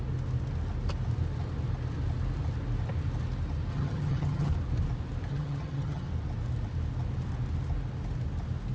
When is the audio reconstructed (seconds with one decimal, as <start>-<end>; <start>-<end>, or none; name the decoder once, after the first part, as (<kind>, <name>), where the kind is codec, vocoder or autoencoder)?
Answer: 3.7-4.5 (vocoder, HiFi-GAN); 5.3-6.1